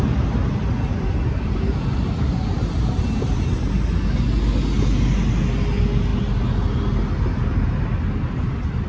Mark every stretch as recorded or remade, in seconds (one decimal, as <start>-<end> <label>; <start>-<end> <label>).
0.0-0.9 recorded; 0.9-3.7 remade; 3.7-8.9 recorded